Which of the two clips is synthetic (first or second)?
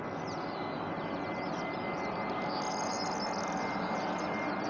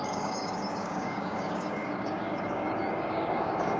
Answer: second